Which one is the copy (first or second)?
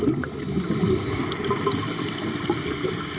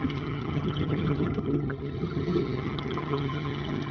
second